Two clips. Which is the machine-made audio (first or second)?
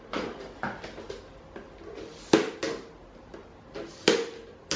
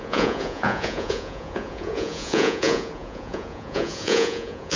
second